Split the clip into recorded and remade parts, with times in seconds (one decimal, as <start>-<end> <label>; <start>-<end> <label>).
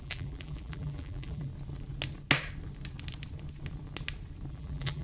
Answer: 0.0-1.5 remade; 1.5-4.5 recorded; 4.5-5.0 remade